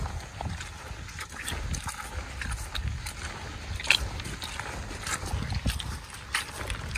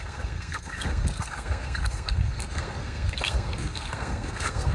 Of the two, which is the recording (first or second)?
first